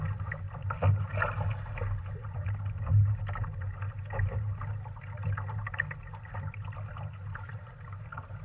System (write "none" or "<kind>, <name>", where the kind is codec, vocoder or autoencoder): none